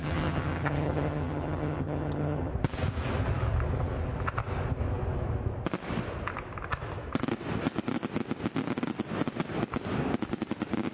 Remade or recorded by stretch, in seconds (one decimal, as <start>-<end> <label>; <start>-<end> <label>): 0.0-2.5 remade; 2.5-10.9 recorded